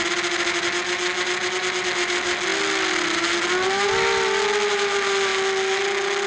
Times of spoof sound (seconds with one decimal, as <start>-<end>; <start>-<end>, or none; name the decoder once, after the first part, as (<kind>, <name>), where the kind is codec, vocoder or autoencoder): none